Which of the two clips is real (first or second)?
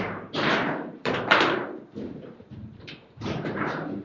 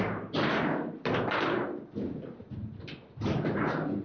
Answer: second